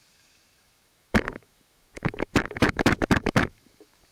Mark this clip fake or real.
fake